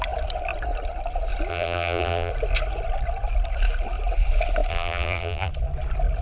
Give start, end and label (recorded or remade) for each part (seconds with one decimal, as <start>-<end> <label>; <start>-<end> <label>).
0.0-1.5 recorded; 1.5-2.3 remade; 2.3-4.7 recorded; 4.7-5.5 remade; 5.5-6.2 recorded